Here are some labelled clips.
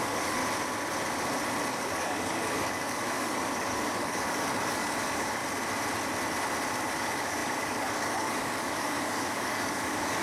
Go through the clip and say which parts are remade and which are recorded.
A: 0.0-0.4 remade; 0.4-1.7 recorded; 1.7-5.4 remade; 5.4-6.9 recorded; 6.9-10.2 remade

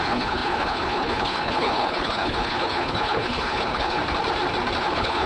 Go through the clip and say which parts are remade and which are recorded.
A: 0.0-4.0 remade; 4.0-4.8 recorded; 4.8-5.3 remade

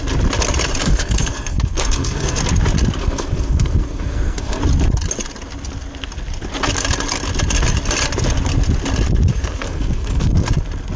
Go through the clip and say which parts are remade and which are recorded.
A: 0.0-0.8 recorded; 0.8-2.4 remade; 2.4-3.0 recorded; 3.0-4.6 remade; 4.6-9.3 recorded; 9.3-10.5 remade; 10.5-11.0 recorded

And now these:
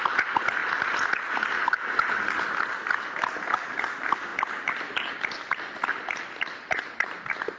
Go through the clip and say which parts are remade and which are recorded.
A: 0.0-7.6 recorded